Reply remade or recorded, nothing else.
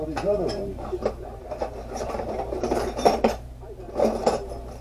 remade